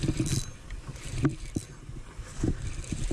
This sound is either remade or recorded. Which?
recorded